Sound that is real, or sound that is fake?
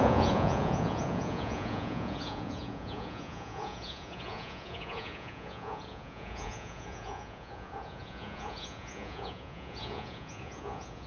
fake